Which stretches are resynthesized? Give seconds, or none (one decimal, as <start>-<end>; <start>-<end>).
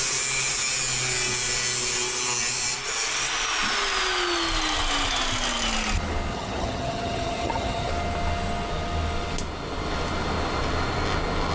6.3-7.9